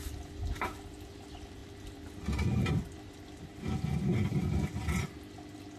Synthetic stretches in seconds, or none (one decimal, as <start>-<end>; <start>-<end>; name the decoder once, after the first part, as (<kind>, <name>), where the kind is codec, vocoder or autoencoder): none